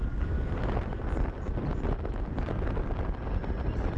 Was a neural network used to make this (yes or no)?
no